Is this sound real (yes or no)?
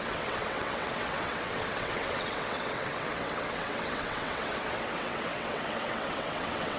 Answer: no